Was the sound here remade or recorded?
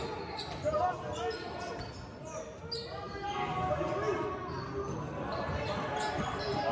recorded